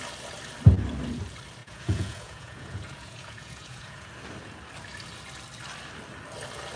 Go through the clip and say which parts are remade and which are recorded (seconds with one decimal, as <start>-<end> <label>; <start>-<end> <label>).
0.0-1.6 recorded; 1.6-4.1 remade; 4.1-6.8 recorded